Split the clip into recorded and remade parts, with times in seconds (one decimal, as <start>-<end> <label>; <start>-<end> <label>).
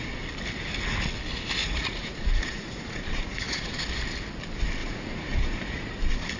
0.0-1.6 recorded; 1.6-3.8 remade; 3.8-4.8 recorded; 4.8-5.9 remade; 5.9-6.4 recorded